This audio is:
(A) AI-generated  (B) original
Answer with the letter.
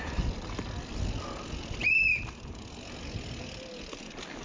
B